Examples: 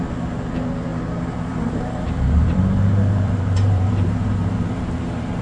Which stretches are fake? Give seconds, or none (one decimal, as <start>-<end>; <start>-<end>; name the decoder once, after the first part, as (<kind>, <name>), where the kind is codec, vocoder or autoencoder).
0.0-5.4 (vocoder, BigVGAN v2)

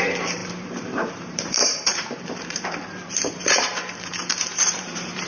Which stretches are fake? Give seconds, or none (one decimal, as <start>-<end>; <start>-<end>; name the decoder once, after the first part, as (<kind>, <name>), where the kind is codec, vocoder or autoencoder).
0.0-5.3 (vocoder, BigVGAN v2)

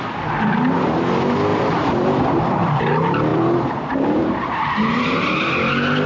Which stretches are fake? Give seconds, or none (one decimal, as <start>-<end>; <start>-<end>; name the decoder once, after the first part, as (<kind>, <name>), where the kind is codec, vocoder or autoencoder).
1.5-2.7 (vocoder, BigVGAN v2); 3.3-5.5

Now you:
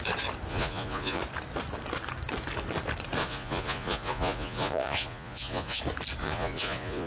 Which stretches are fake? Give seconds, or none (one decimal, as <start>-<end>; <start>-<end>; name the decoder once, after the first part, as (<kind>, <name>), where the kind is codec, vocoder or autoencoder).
0.5-1.2 (vocoder, Vocos); 3.2-5.8; 6.2-7.1

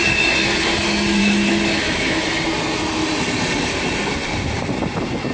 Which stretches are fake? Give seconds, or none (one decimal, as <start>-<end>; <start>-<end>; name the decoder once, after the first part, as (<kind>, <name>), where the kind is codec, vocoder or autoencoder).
1.2-2.2 (autoencoder, DAC-VAE)